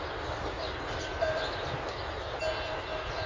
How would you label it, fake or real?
real